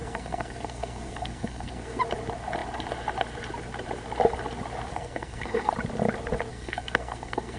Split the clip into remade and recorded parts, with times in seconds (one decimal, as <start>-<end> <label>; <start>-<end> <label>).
0.0-2.0 remade; 2.0-4.9 recorded; 4.9-5.7 remade; 5.7-6.5 recorded; 6.5-7.6 remade